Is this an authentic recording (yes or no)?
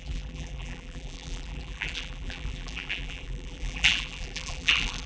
no